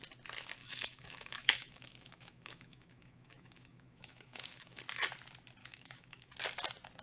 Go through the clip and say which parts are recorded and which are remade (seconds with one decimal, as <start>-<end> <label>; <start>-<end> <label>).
0.0-0.6 recorded; 0.6-4.8 remade; 4.8-5.6 recorded; 5.6-6.3 remade; 6.3-7.0 recorded